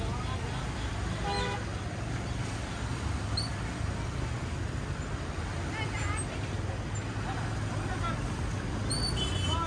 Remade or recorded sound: recorded